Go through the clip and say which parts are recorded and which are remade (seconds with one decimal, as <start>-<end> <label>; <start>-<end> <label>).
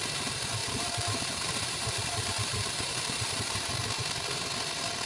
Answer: 0.0-0.6 recorded; 0.6-3.7 remade; 3.7-5.1 recorded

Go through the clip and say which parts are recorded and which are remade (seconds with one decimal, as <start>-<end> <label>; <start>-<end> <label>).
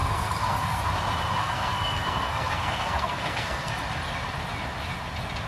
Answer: 0.0-0.8 remade; 0.8-1.4 recorded; 1.4-3.7 remade; 3.7-5.5 recorded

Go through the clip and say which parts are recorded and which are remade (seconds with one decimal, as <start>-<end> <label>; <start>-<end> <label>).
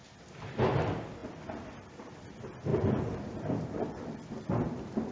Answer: 0.0-1.2 recorded; 1.2-2.1 remade; 2.1-2.7 recorded; 2.7-4.4 remade; 4.4-5.1 recorded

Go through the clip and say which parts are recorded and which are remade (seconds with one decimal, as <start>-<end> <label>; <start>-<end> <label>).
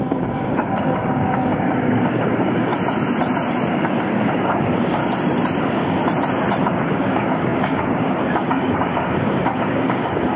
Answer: 0.0-2.7 remade; 2.7-3.7 recorded; 3.7-5.0 remade; 5.0-5.6 recorded; 5.6-6.0 remade; 6.0-6.6 recorded; 6.6-10.4 remade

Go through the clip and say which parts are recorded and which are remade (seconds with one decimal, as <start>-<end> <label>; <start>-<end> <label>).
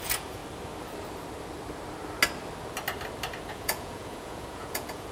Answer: 0.0-0.4 remade; 0.4-3.5 recorded; 3.5-5.1 remade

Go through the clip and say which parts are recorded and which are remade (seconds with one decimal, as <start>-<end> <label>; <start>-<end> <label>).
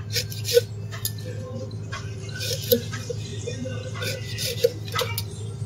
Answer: 0.0-5.7 recorded